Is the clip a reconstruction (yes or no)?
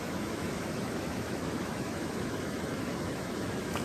yes